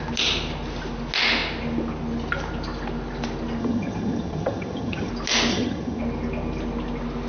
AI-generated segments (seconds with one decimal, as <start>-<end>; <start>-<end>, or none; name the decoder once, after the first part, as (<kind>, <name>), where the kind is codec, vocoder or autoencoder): 3.6-5.1 (vocoder, HiFi-GAN); 5.5-6.0